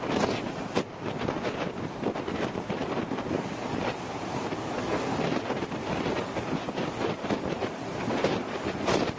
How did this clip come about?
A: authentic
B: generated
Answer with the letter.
A